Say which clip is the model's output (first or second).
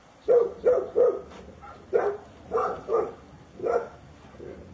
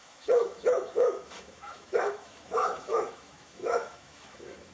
second